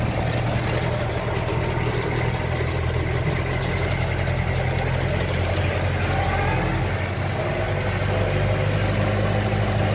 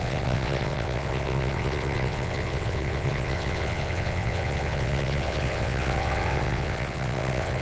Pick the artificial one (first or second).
second